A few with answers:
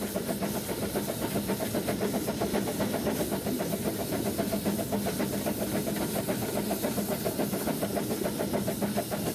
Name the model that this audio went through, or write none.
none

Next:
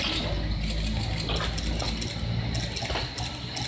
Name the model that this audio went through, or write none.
none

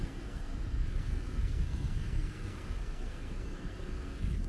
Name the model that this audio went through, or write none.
codec, SNAC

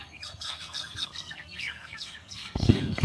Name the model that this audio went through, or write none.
codec, SNAC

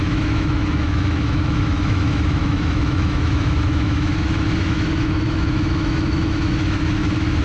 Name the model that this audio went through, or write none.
autoencoder, DAC-VAE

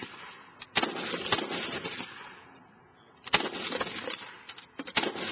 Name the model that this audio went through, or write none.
none